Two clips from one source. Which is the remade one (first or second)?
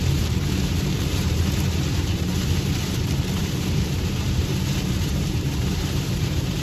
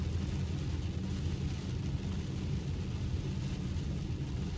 first